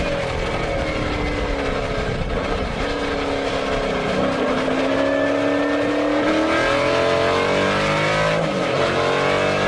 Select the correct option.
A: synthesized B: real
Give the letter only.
B